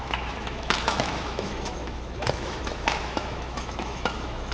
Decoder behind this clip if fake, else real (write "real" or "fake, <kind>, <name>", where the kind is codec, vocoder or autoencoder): fake, autoencoder, DAC-VAE